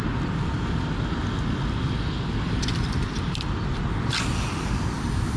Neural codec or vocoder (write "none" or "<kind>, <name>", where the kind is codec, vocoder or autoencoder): none